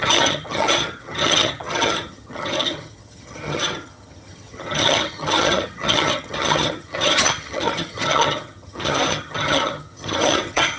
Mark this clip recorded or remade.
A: remade